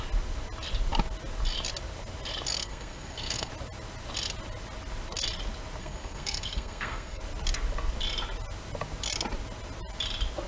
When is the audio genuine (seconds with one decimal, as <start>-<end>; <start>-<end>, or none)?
0.0-2.6; 3.5-5.8; 7.2-10.5